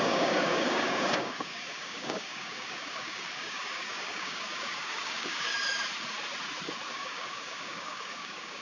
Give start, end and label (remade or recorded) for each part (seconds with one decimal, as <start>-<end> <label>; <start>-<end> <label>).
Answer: 0.0-5.5 remade; 5.5-6.9 recorded; 6.9-8.6 remade